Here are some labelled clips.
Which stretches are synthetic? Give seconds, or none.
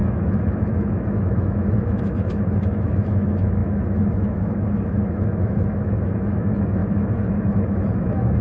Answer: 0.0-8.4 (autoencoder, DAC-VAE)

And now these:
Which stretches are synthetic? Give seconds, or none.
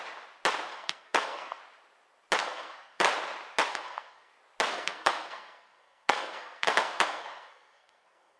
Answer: 0.7-1.6 (codec, SNAC); 2.4-3.1; 3.7-4.3; 4.7-8.4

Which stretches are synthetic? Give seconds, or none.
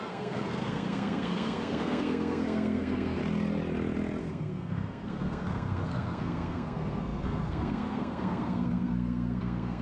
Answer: 0.0-3.2 (codec, SNAC); 4.2-9.8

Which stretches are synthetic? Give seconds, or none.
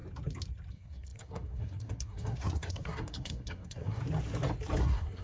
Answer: 0.7-4.0 (codec, SNAC); 4.8-5.2